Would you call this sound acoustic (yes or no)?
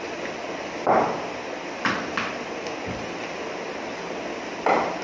yes